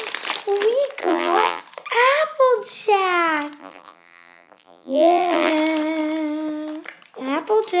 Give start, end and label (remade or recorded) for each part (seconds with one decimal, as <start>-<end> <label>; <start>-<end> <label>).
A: 0.0-1.0 recorded; 1.0-1.6 remade; 1.6-3.6 recorded; 3.6-5.5 remade; 5.5-7.8 recorded